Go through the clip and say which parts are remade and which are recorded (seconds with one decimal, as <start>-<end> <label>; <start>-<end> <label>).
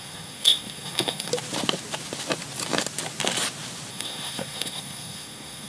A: 0.0-1.3 remade; 1.3-3.9 recorded; 3.9-5.7 remade